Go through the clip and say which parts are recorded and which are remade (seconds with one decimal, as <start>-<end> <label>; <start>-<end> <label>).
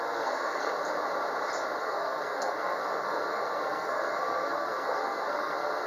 0.0-0.7 remade; 0.7-1.8 recorded; 1.8-5.9 remade